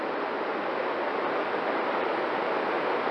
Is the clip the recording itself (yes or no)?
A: yes